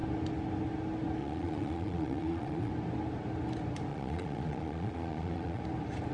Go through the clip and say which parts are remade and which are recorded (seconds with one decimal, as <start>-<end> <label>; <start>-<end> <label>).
0.0-1.2 recorded; 1.2-2.7 remade; 2.7-3.9 recorded; 3.9-5.6 remade; 5.6-6.1 recorded